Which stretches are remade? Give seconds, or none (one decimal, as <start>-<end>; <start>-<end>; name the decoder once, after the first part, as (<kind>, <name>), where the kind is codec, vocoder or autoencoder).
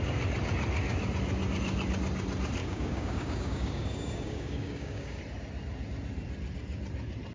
2.6-5.2 (codec, DAC)